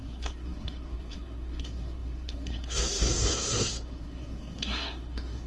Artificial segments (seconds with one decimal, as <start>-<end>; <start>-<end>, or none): 0.0-5.5